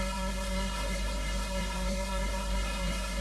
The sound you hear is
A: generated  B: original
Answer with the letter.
A